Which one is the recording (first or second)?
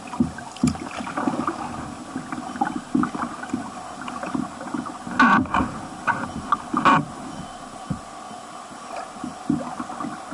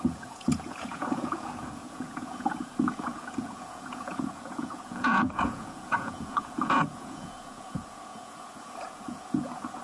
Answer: first